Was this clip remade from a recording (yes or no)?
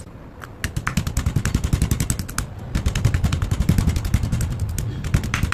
no